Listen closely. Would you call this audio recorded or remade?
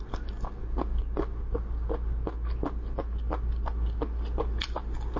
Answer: recorded